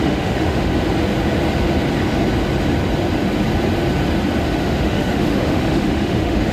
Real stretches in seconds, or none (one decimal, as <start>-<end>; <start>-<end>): 0.7-4.6